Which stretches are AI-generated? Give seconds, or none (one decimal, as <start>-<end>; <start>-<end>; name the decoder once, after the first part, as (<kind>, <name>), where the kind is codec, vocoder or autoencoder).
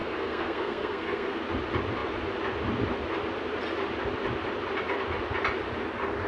0.0-1.4 (codec, SNAC)